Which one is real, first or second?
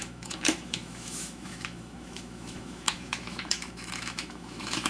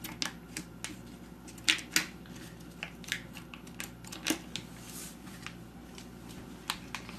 second